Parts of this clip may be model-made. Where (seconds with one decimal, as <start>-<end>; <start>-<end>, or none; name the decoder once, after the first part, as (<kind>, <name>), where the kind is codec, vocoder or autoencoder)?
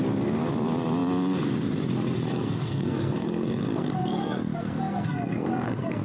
2.3-6.0 (codec, SNAC)